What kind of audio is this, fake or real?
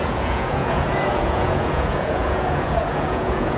fake